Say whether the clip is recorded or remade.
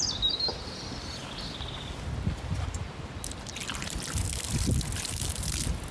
recorded